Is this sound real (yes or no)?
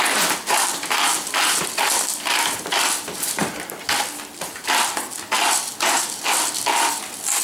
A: yes